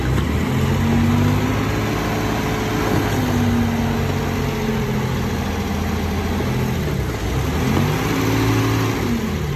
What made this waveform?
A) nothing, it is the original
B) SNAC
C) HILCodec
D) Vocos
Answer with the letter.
A